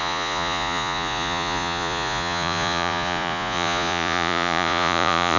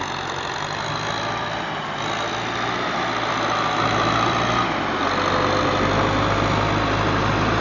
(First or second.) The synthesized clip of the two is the first